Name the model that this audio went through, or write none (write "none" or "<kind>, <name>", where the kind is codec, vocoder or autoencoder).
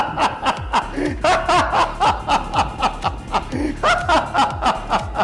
none